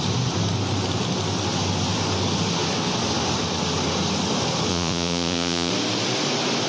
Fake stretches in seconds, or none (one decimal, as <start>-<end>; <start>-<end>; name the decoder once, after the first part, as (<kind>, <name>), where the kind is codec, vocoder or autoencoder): 4.7-5.7 (vocoder, Vocos)